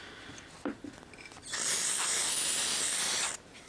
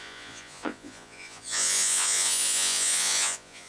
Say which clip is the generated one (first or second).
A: second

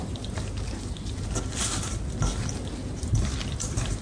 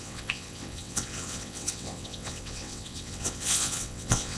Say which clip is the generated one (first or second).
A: second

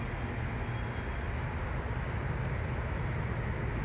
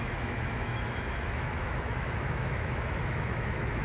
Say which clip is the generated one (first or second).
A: second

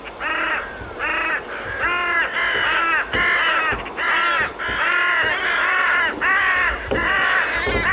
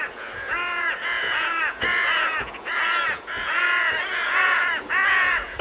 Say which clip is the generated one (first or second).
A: second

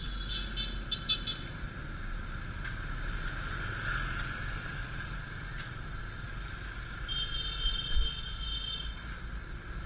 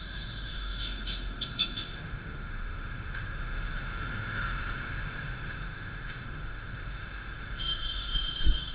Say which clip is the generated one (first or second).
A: second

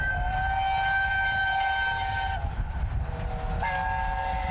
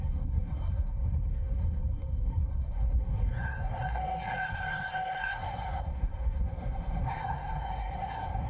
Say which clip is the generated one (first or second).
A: second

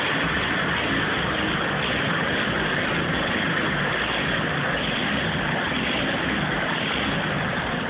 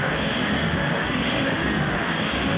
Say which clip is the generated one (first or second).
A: second